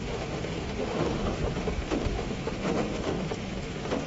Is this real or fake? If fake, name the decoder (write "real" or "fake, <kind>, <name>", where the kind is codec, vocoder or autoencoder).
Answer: fake, autoencoder, DAC-VAE